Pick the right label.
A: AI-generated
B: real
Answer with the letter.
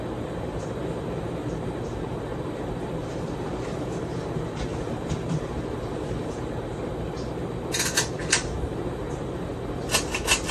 A